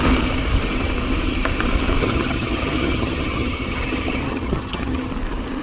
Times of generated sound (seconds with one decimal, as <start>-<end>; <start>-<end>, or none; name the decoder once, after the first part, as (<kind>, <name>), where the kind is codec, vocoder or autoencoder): 2.0-5.1 (vocoder, HiFi-GAN)